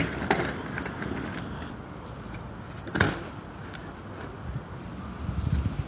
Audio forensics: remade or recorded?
recorded